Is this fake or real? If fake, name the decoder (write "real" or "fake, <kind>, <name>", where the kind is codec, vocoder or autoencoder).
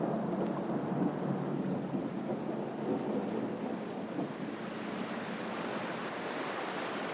real